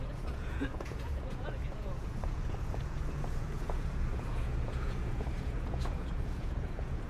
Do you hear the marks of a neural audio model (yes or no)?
yes